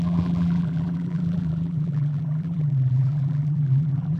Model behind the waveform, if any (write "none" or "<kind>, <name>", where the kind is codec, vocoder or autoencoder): vocoder, BigVGAN v2